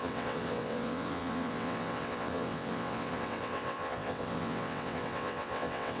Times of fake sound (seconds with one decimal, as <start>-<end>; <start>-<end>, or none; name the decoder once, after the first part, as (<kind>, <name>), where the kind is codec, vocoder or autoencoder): 0.0-6.0 (vocoder, WaveNeXt)